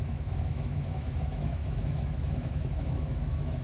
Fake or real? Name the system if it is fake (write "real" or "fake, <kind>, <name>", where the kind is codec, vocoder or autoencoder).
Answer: fake, autoencoder, DAC-VAE